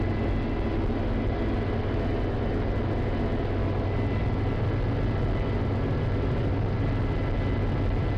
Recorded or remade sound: recorded